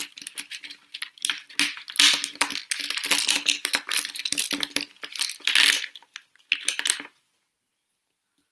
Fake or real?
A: real